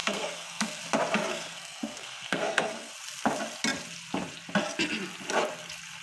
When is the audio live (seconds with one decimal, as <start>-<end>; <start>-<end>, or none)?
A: 0.8-1.3; 2.9-6.0